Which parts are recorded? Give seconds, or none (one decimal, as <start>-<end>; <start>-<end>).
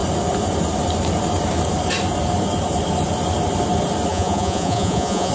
0.0-4.1